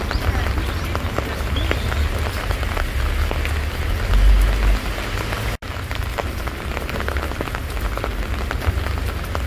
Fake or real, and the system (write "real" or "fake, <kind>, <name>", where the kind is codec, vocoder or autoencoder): real